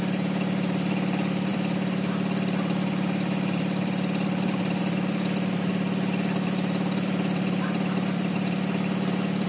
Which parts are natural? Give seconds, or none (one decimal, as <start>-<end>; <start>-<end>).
none